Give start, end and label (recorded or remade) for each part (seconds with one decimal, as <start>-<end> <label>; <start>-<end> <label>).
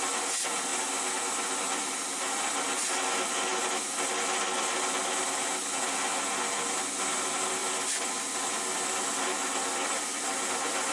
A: 0.0-10.9 recorded